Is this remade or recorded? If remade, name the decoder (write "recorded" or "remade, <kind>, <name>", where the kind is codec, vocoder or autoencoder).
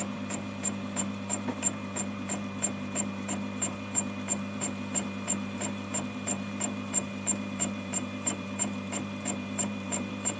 remade, vocoder, BigVGAN v2